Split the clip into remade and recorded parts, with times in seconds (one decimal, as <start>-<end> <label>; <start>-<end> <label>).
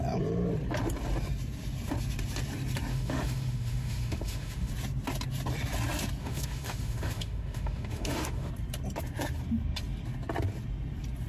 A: 0.0-2.9 recorded; 2.9-4.7 remade; 4.7-6.2 recorded; 6.2-8.5 remade; 8.5-11.3 recorded